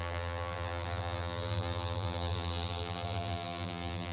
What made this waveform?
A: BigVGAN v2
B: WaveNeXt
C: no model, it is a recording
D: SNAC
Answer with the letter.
A